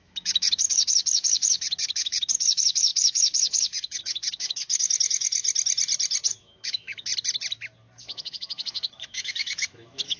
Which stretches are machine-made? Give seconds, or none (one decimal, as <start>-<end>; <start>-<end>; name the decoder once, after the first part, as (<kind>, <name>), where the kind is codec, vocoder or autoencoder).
0.0-5.4 (autoencoder, DAC-VAE); 6.4-7.1; 8.0-10.2